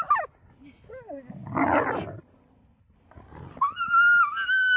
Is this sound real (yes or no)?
yes